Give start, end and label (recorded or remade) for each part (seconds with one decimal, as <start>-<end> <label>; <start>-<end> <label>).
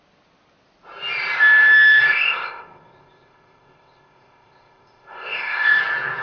0.0-2.1 recorded; 2.1-5.8 remade; 5.8-6.2 recorded